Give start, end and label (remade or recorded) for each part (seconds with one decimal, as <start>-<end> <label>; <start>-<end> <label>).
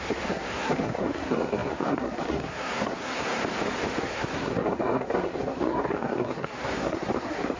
0.0-3.4 remade; 3.4-4.0 recorded; 4.0-7.6 remade